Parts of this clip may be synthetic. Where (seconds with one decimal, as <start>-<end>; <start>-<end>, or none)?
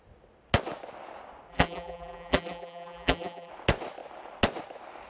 1.5-3.5